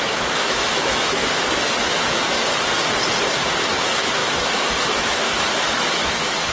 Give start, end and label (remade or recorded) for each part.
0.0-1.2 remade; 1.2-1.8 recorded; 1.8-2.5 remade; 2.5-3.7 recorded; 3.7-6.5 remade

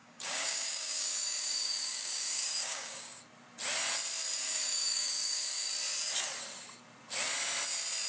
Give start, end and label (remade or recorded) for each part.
0.0-3.2 remade; 3.2-4.3 recorded; 4.3-5.7 remade; 5.7-8.1 recorded

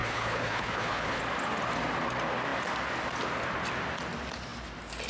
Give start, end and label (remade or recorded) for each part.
0.0-1.2 remade; 1.2-5.1 recorded

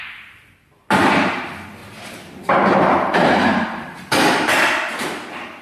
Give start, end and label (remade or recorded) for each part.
0.0-1.8 recorded; 1.8-4.6 remade; 4.6-5.6 recorded

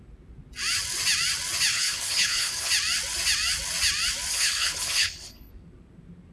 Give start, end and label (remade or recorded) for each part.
0.0-1.7 recorded; 1.7-2.7 remade; 2.7-4.3 recorded; 4.3-5.5 remade; 5.5-6.3 recorded

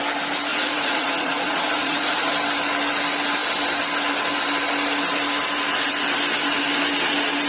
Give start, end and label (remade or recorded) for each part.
0.0-0.5 recorded; 0.5-2.3 remade; 2.3-7.5 recorded

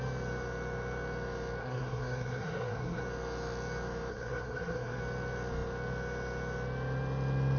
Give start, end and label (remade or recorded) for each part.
0.0-1.6 recorded; 1.6-3.0 remade; 3.0-4.1 recorded; 4.1-5.0 remade; 5.0-7.6 recorded